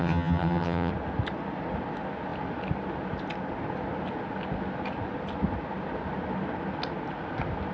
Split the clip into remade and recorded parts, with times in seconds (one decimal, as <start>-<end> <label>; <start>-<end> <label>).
0.0-0.9 remade; 0.9-7.7 recorded